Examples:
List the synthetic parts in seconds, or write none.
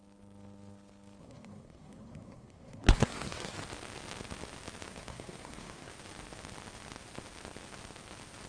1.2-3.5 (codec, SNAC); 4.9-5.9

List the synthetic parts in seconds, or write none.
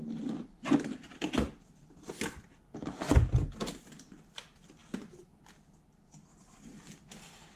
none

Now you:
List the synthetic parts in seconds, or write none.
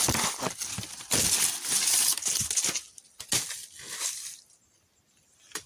none